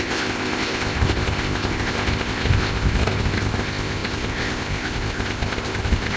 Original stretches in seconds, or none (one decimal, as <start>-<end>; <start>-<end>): none